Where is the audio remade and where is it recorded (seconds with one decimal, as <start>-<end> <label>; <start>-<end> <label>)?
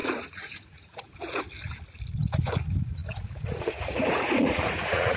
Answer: 0.0-1.4 remade; 1.4-3.0 recorded; 3.0-5.2 remade